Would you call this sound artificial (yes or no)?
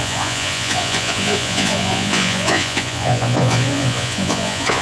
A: yes